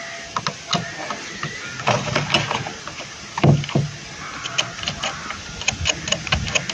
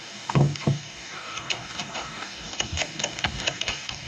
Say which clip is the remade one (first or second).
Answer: second